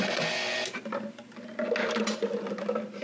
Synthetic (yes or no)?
no